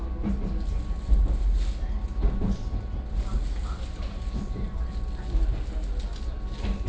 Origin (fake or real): real